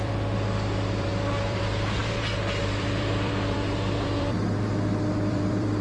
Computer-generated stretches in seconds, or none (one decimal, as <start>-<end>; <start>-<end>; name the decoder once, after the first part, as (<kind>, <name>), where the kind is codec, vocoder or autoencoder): 0.0-2.0 (vocoder, BigVGAN v2); 2.6-5.8

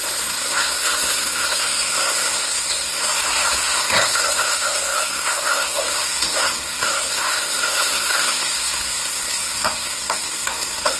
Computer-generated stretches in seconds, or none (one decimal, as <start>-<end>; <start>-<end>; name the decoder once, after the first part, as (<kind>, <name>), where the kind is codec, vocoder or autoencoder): 0.0-11.0 (codec, SNAC)

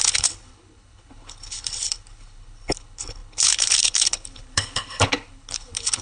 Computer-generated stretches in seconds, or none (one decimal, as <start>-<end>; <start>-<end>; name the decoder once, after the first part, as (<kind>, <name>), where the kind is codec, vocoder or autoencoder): 0.0-6.0 (codec, HILCodec)

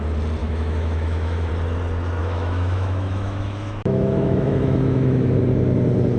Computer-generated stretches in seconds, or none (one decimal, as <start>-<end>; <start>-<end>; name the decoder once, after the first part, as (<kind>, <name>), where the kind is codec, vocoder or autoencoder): 0.4-1.5 (autoencoder, DAC-VAE); 2.2-5.4

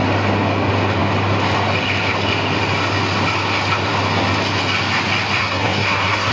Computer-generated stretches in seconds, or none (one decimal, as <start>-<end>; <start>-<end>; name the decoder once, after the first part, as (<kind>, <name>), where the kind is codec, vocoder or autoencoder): 5.4-6.3 (codec, SNAC)

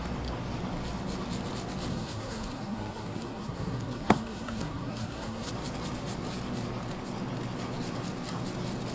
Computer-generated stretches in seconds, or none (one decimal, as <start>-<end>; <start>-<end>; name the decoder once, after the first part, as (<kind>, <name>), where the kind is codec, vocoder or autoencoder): 1.9-5.5 (codec, SNAC)

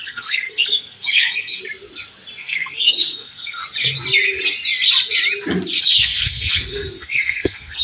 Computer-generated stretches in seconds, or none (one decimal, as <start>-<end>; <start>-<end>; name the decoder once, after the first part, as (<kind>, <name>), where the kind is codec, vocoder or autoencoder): 0.0-1.6 (codec, SNAC); 2.4-3.6; 5.8-7.8

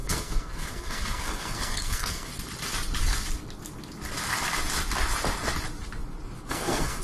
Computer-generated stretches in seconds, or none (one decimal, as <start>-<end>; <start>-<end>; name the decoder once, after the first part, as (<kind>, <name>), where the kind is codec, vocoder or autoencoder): 0.0-2.3 (codec, SNAC); 6.5-7.0